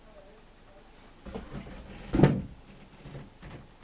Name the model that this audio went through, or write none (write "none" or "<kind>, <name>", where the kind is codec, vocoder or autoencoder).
none